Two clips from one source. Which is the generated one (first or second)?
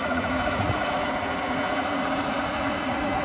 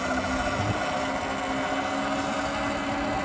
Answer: first